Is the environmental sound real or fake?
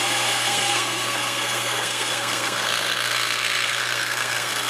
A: fake